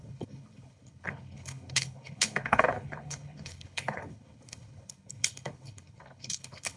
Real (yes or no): no